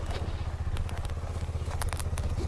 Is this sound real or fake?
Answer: real